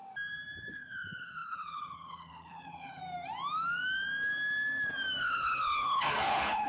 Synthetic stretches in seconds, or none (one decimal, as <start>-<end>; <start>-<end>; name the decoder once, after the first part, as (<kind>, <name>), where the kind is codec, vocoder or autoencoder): 0.7-3.0 (codec, HILCodec); 5.2-6.7